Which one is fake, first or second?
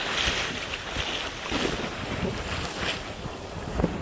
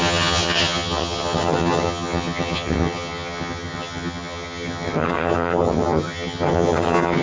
second